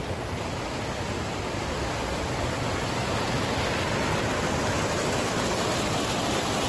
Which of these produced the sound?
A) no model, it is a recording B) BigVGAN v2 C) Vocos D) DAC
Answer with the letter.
A